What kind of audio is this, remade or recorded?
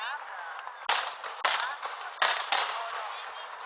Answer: recorded